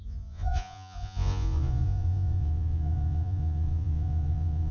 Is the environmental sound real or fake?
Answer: fake